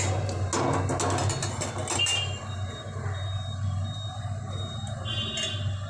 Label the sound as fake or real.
real